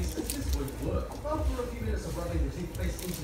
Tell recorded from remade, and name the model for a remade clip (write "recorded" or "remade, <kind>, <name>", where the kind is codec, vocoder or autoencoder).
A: recorded